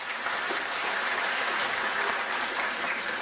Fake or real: fake